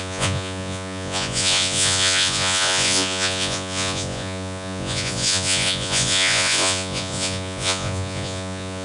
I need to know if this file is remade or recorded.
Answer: remade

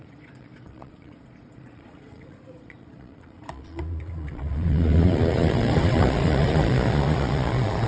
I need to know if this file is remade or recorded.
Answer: remade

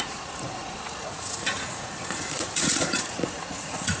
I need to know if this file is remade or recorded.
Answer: remade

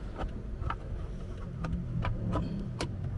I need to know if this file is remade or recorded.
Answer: recorded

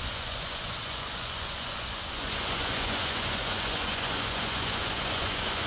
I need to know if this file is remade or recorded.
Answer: remade